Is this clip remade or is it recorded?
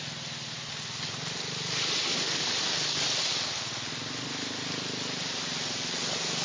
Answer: recorded